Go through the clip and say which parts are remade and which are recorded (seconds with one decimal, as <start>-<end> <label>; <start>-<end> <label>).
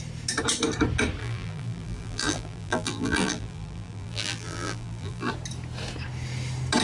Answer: 0.0-1.2 recorded; 1.2-5.3 remade; 5.3-6.8 recorded